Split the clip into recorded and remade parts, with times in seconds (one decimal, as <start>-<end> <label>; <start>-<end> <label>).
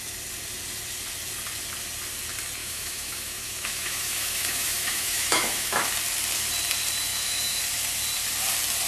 0.0-2.6 recorded; 2.6-5.9 remade; 5.9-7.1 recorded; 7.1-7.6 remade; 7.6-8.9 recorded